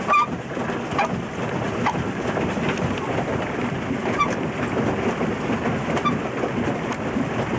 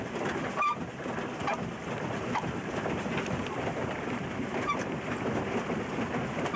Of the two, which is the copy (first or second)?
second